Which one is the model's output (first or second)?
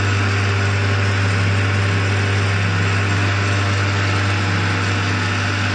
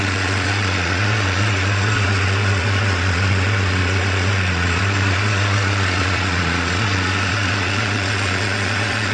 second